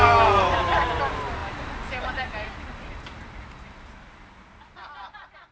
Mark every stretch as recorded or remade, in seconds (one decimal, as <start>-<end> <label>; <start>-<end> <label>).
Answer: 0.0-5.5 recorded